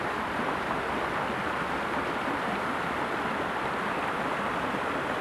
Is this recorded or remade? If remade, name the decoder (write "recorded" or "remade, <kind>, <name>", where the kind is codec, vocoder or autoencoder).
recorded